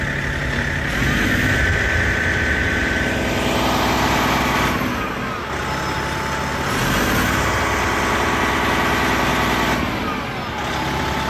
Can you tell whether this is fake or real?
real